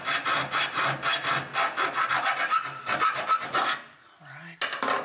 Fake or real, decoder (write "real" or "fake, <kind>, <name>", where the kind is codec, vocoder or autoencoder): real